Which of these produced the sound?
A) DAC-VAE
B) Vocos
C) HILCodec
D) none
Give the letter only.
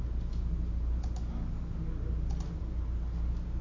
D